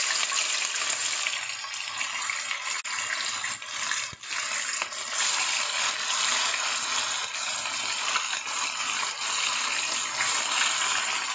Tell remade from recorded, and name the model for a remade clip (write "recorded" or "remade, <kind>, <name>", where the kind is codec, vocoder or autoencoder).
recorded